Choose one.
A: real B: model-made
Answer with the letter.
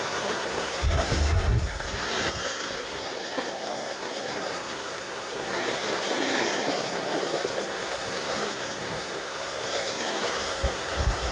B